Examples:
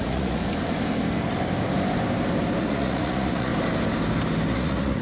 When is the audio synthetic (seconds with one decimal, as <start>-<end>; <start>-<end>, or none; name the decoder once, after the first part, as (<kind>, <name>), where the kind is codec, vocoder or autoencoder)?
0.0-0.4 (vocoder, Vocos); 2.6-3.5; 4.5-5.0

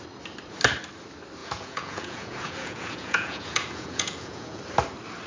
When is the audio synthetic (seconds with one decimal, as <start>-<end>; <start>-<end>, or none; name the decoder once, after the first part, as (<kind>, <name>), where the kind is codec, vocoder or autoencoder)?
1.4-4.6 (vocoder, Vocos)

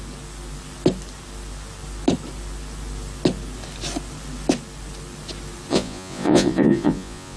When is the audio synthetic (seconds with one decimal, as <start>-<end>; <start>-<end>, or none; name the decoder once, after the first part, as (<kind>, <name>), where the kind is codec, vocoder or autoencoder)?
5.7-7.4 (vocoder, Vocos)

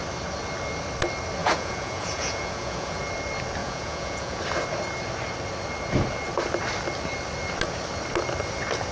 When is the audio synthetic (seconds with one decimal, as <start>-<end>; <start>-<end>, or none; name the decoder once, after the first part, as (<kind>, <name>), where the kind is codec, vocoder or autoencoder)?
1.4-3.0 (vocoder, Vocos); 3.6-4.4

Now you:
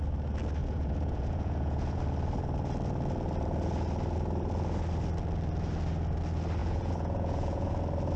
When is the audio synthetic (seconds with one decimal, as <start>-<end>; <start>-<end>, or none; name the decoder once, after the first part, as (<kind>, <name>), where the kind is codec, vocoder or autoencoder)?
0.6-2.0 (vocoder, Vocos); 6.6-7.7

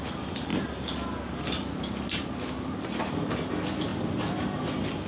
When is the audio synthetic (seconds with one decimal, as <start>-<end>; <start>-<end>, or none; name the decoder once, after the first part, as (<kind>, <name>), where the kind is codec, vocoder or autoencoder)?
none

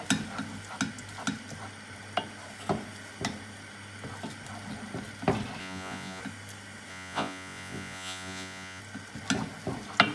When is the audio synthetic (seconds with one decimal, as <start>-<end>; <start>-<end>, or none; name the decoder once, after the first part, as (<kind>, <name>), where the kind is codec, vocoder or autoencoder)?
5.6-6.2 (vocoder, Vocos); 6.9-8.8

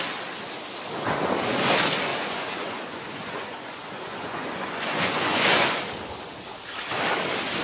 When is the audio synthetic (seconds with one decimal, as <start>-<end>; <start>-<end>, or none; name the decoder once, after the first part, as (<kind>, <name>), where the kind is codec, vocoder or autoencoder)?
2.1-5.8 (vocoder, Vocos)